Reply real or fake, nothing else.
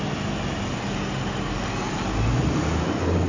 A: real